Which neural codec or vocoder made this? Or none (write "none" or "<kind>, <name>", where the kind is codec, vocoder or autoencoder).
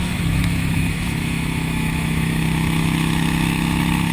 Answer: autoencoder, DAC-VAE